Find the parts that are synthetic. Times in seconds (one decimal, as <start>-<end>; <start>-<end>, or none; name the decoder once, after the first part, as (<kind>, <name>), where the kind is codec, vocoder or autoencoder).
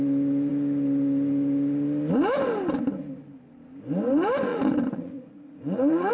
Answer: 4.5-6.1 (vocoder, Vocos)